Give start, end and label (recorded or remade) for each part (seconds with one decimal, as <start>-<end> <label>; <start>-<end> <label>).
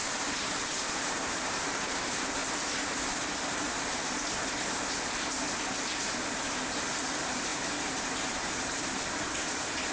0.0-2.4 remade; 2.4-6.3 recorded; 6.3-9.9 remade